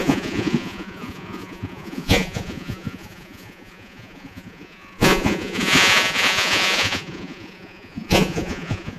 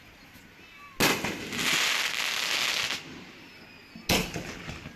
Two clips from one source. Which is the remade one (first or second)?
first